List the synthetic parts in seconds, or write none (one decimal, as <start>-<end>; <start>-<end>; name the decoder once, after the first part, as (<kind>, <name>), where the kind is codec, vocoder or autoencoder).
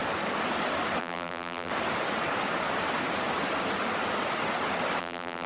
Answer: 1.0-1.7 (vocoder, BigVGAN v2); 5.0-5.5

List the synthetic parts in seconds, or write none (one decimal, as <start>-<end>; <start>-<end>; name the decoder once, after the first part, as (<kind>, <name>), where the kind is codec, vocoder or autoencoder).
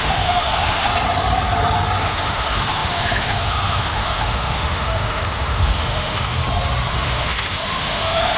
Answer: 0.0-0.9 (autoencoder, DAC-VAE); 2.0-6.4; 6.9-8.4